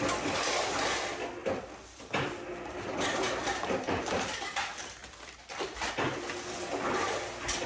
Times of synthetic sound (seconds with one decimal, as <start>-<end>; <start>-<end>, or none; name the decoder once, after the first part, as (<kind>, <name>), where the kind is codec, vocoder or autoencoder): 1.4-2.5 (vocoder, BigVGAN v2); 3.1-4.5; 5.0-5.9